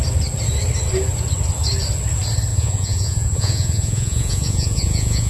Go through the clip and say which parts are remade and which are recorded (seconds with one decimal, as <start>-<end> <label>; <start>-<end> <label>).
0.0-2.5 recorded; 2.5-5.3 remade